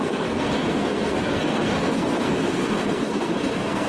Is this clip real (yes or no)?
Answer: no